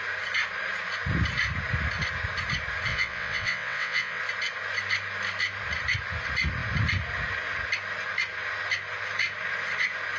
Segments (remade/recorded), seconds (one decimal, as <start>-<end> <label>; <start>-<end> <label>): 0.0-2.9 recorded; 2.9-4.2 remade; 4.2-10.2 recorded